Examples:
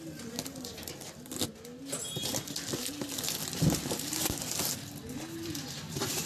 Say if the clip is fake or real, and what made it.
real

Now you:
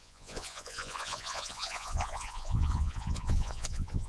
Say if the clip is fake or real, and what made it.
fake, vocoder, Vocos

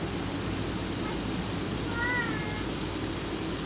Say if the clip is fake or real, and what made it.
real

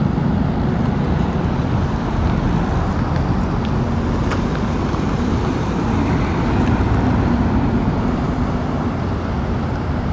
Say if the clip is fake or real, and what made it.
real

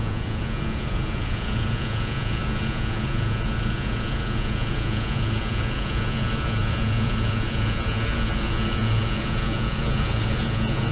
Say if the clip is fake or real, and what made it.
fake, vocoder, Vocos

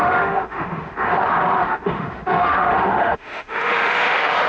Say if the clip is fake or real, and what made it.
fake, autoencoder, DAC-VAE